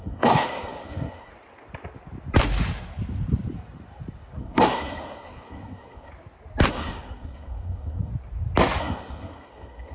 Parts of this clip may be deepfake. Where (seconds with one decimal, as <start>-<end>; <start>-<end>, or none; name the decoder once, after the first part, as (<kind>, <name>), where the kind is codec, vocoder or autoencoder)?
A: 0.0-1.3 (codec, SNAC); 4.4-6.1; 6.7-8.1; 8.8-9.9

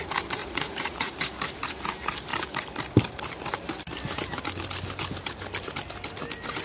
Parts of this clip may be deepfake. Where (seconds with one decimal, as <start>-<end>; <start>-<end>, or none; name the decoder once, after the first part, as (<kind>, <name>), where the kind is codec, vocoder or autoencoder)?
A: 0.4-1.1 (vocoder, Vocos)

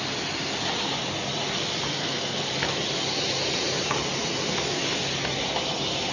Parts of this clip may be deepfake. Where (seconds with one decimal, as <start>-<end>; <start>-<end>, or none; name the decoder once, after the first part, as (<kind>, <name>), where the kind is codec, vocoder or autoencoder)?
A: 1.9-2.5 (codec, SNAC)

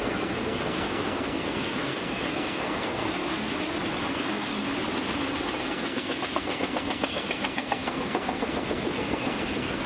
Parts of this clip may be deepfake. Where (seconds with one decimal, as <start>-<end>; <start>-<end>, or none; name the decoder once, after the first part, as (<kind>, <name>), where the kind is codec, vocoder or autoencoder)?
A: 0.0-3.2 (codec, SNAC); 4.1-4.5; 5.6-9.9

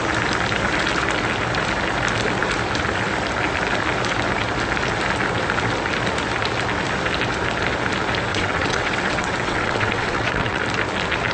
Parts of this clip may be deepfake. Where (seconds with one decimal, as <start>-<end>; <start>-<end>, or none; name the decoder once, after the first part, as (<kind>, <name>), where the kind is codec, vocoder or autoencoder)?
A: 8.3-10.6 (vocoder, WaveNeXt)

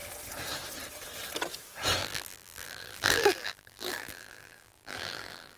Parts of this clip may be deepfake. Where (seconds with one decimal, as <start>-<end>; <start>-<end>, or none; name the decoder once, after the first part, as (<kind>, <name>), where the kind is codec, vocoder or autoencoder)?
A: 2.0-5.6 (vocoder, BigVGAN v2)

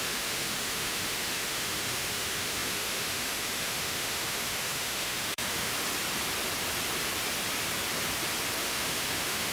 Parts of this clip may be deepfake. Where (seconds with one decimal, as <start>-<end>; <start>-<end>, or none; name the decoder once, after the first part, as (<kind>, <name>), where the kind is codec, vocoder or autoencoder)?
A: 0.0-5.7 (autoencoder, DAC-VAE); 8.6-9.5